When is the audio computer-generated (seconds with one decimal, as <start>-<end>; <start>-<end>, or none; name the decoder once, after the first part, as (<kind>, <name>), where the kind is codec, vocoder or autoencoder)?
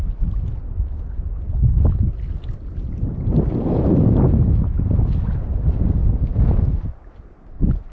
none